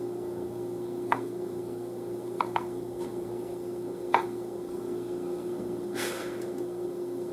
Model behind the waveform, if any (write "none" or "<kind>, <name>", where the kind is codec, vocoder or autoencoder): codec, SNAC